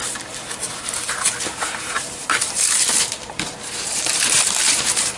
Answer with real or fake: fake